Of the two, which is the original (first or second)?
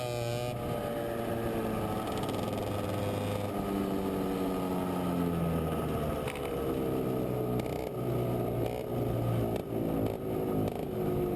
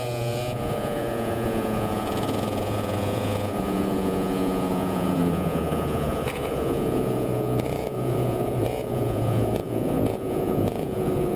first